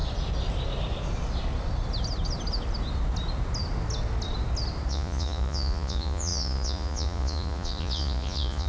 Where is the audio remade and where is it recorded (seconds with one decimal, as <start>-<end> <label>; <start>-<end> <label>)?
0.0-4.9 recorded; 4.9-8.7 remade